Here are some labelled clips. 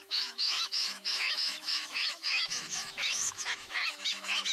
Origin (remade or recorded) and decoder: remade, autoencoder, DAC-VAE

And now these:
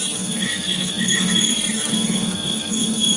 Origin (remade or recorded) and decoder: remade, autoencoder, DAC-VAE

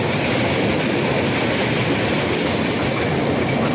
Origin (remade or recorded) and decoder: recorded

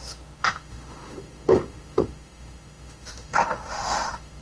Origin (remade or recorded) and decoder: remade, autoencoder, DAC-VAE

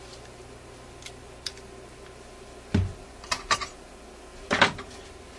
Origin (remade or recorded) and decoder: recorded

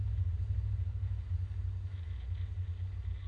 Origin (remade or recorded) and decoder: recorded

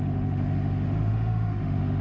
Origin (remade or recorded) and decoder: remade, autoencoder, DAC-VAE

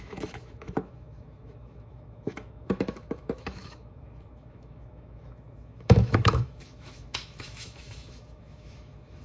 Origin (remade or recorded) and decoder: remade, autoencoder, DAC-VAE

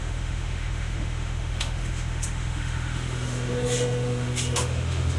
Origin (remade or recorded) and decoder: remade, autoencoder, DAC-VAE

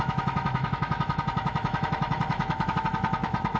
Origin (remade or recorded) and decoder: remade, autoencoder, DAC-VAE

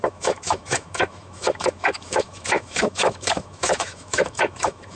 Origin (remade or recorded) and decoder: remade, autoencoder, DAC-VAE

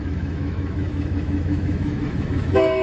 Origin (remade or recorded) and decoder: remade, autoencoder, DAC-VAE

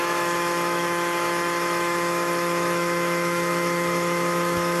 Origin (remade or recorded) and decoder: remade, autoencoder, DAC-VAE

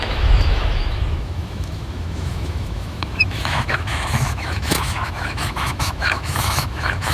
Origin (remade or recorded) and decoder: remade, autoencoder, DAC-VAE